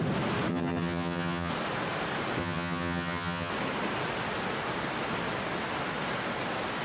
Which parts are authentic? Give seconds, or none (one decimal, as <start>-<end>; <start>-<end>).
0.0-0.5; 1.5-2.4; 3.5-6.8